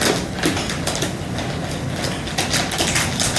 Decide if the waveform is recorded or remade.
recorded